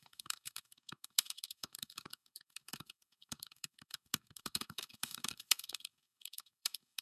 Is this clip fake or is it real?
fake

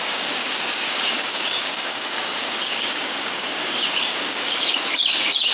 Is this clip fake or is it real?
fake